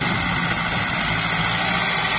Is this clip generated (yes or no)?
no